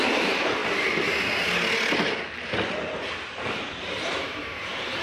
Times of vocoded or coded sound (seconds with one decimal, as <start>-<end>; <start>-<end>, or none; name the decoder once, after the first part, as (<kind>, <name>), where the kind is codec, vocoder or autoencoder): 0.0-0.6 (vocoder, BigVGAN v2); 3.5-5.0